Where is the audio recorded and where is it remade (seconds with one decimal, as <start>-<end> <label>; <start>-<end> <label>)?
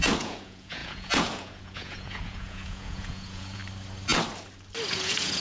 0.0-3.6 remade; 3.6-4.9 recorded; 4.9-5.4 remade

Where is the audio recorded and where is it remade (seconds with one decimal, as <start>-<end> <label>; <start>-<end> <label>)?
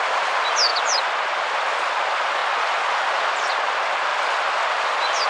0.0-5.3 recorded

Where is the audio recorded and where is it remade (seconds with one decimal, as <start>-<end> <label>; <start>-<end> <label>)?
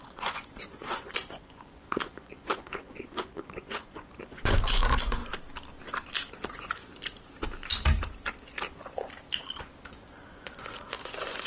0.0-5.2 remade; 5.2-6.3 recorded; 6.3-6.9 remade; 6.9-9.9 recorded; 9.9-11.5 remade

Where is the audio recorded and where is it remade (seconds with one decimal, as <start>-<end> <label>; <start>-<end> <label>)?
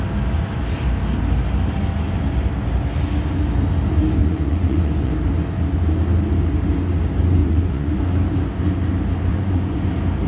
0.0-4.2 recorded; 4.2-5.1 remade; 5.1-7.4 recorded; 7.4-8.0 remade; 8.0-9.3 recorded; 9.3-9.9 remade; 9.9-10.3 recorded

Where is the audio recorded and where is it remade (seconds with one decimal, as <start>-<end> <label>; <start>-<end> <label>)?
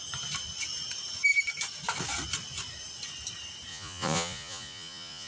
0.0-3.7 recorded; 3.7-5.3 remade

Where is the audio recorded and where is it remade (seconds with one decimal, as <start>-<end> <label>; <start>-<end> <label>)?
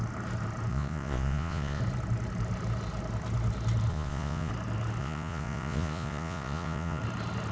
0.0-0.7 recorded; 0.7-1.8 remade; 1.8-3.9 recorded; 3.9-4.5 remade; 4.5-5.0 recorded; 5.0-7.0 remade; 7.0-7.5 recorded